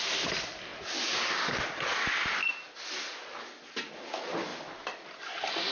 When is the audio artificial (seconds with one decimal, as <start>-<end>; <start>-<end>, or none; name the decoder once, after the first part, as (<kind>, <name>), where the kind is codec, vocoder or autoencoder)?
4.5-5.2 (vocoder, BigVGAN v2)